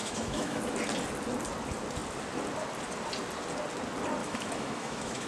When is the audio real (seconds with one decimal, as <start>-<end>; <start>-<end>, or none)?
0.6-4.2